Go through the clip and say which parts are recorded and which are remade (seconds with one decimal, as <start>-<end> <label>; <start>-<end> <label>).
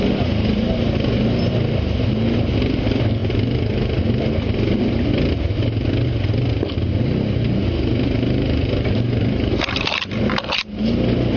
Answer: 0.0-11.4 recorded